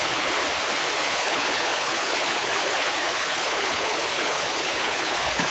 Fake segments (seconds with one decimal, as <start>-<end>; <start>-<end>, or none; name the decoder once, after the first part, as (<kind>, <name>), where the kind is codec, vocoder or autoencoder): 0.0-0.4 (codec, HILCodec); 1.0-5.5